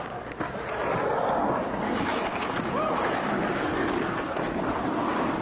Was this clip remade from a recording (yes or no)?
no